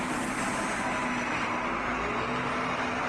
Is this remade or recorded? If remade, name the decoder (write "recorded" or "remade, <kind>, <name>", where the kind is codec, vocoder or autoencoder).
recorded